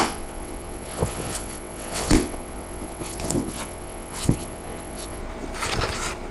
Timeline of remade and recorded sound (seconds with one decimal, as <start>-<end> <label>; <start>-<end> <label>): 0.0-5.2 remade; 5.2-6.3 recorded